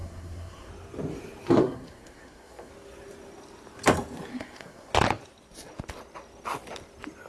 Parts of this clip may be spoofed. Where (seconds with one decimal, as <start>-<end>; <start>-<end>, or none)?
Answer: 0.0-0.7; 1.6-2.7; 4.3-4.9